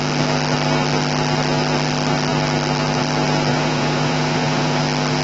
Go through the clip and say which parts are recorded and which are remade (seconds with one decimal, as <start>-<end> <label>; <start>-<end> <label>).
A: 0.0-3.5 recorded; 3.5-4.8 remade; 4.8-5.2 recorded